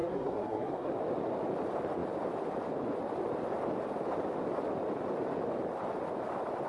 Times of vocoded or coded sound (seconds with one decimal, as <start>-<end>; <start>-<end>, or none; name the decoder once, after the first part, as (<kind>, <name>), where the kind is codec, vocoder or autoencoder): 0.0-0.9 (codec, SNAC)